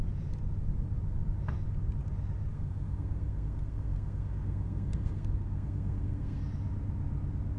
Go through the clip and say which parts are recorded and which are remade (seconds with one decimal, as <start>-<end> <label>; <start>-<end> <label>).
0.0-2.5 recorded; 2.5-6.4 remade; 6.4-7.6 recorded